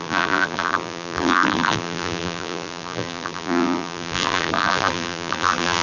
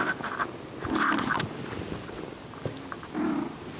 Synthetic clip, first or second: first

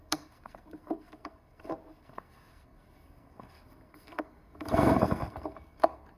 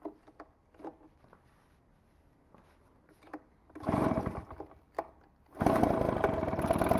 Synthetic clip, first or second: first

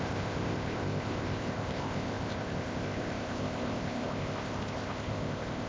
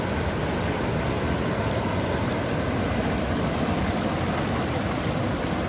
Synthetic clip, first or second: first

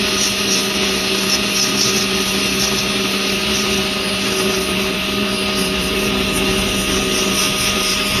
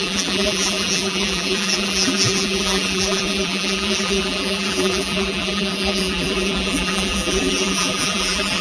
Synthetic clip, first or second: second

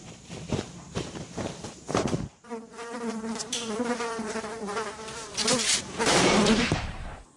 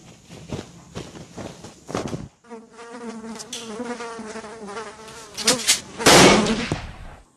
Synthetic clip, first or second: first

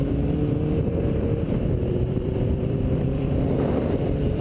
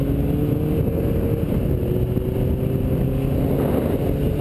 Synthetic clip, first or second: first